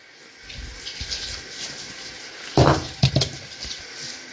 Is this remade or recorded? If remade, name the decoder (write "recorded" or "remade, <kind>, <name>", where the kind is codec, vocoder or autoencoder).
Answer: recorded